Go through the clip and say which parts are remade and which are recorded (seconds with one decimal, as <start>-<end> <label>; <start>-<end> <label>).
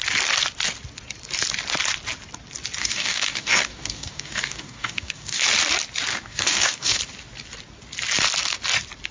0.0-2.8 recorded; 2.8-5.4 remade; 5.4-6.1 recorded; 6.1-7.0 remade; 7.0-9.1 recorded